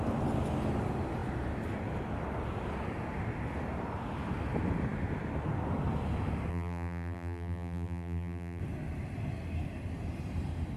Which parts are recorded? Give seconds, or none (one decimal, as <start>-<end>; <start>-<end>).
0.0-6.5; 8.6-10.8